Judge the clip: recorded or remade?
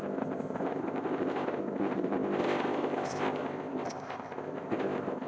remade